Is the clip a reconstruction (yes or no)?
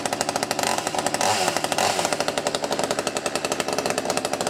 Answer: no